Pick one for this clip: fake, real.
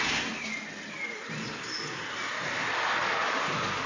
real